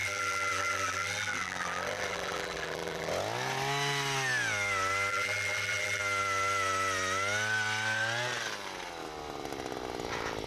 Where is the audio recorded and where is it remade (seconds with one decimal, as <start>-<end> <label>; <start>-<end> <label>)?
0.0-3.1 remade; 3.1-5.1 recorded; 5.1-6.0 remade; 6.0-10.5 recorded